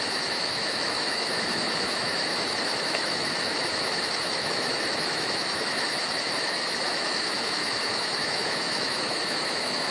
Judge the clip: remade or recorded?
remade